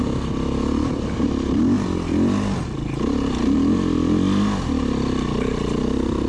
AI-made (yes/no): no